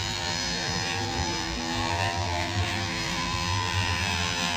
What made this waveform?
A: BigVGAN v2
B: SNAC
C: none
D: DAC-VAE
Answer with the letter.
A